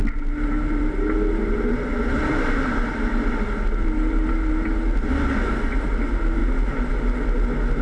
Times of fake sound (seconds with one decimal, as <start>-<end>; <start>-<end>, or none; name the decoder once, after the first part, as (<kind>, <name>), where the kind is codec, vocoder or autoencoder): none